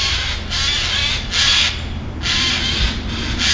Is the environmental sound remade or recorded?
recorded